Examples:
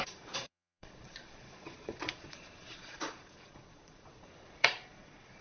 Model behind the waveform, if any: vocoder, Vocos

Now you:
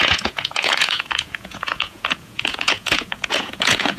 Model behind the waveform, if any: vocoder, Vocos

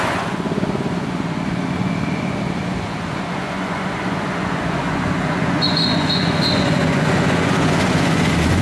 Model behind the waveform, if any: vocoder, Vocos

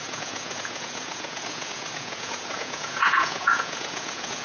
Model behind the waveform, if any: vocoder, Vocos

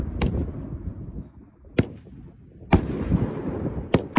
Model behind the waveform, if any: none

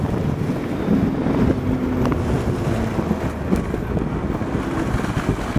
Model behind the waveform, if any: none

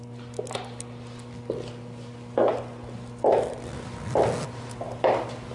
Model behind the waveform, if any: none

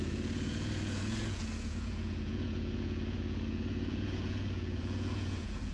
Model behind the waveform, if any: vocoder, Vocos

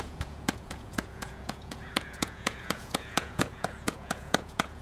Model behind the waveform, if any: vocoder, Vocos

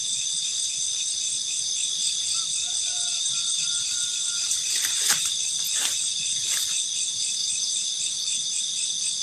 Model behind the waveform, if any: none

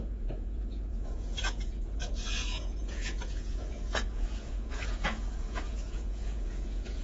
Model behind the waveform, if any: vocoder, Vocos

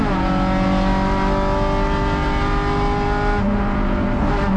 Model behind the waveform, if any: none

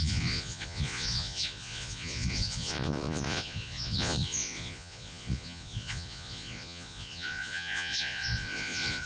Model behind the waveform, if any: vocoder, Vocos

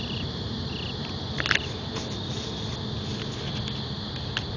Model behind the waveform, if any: none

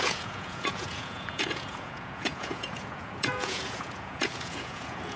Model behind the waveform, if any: vocoder, Vocos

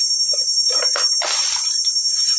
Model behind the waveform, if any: none